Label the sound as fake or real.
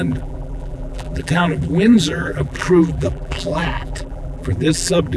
fake